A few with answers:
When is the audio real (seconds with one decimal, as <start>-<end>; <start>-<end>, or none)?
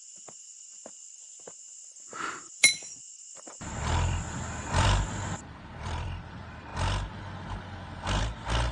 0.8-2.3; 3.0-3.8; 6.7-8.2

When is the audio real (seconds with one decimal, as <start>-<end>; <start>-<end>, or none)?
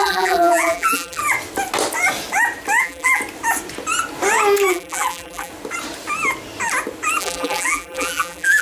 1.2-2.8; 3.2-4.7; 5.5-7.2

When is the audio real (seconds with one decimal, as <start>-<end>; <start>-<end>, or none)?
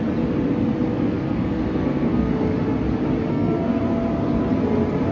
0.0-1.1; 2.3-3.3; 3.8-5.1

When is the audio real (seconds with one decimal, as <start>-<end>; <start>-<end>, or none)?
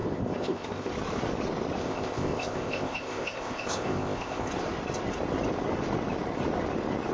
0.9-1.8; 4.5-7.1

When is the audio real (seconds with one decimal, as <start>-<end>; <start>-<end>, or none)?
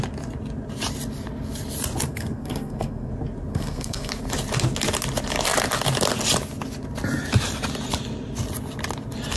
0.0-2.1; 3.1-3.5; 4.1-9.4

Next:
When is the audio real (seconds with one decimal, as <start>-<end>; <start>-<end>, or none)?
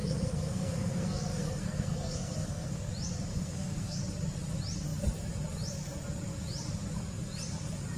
2.9-3.3; 4.0-8.0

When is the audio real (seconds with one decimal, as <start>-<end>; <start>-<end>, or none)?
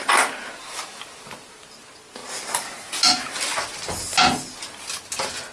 0.0-5.5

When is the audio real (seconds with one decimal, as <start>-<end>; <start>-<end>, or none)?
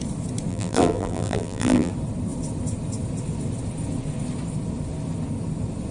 0.0-0.5; 1.9-5.9